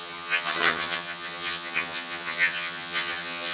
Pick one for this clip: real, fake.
fake